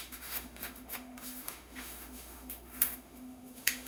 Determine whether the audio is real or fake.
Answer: fake